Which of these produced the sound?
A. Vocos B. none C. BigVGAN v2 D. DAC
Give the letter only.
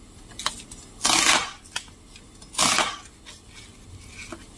B